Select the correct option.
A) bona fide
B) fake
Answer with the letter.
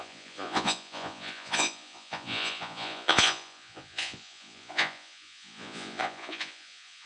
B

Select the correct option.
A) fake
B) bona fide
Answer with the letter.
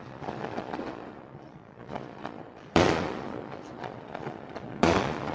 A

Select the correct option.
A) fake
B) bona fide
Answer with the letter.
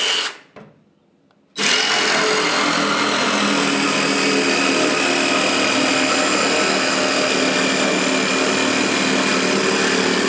B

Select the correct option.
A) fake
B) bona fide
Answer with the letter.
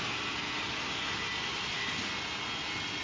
B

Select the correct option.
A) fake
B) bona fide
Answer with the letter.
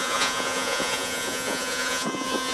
A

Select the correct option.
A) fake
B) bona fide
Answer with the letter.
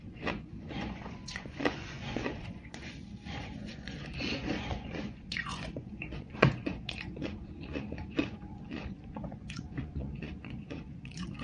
A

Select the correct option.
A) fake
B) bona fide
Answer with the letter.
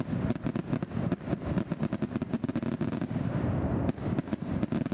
B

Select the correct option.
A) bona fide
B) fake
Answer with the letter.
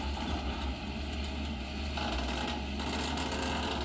A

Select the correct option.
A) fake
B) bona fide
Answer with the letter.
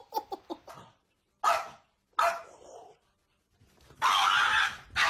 B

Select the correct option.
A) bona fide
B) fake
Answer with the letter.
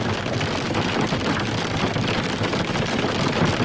A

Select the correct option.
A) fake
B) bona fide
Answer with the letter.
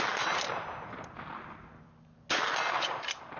B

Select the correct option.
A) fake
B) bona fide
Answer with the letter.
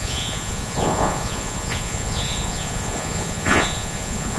A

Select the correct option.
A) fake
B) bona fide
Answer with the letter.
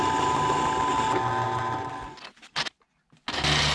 B